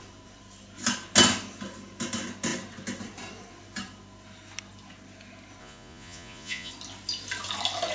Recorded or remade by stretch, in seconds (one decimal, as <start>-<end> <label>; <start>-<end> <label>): 0.0-5.6 recorded; 5.6-6.7 remade; 6.7-7.9 recorded